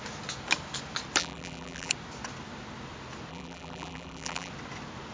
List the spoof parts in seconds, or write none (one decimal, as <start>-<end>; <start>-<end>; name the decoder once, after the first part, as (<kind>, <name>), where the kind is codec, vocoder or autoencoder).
1.2-1.9 (vocoder, BigVGAN v2); 3.3-4.5